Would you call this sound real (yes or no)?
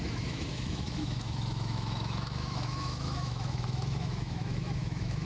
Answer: no